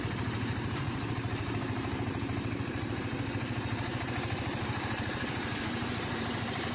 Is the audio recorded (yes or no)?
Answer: no